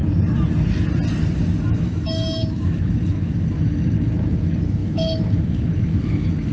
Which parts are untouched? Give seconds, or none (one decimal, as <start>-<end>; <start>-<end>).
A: 0.0-1.6